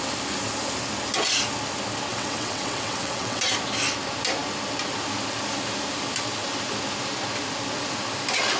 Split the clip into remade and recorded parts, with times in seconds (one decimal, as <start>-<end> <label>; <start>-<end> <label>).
0.0-2.1 recorded; 2.1-3.4 remade; 3.4-8.6 recorded